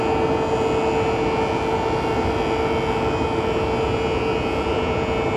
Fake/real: real